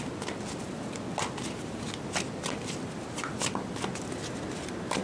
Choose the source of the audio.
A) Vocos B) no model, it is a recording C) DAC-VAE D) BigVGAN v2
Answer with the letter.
B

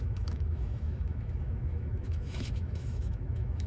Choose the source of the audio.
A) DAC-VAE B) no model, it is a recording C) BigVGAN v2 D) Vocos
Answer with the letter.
A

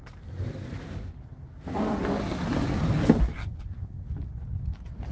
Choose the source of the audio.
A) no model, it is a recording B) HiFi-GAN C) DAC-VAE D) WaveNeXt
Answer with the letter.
A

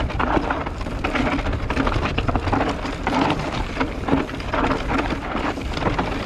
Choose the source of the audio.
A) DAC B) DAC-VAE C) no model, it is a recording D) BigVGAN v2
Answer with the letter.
C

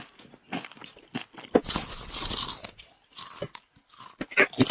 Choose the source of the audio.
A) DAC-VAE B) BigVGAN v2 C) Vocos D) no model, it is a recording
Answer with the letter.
D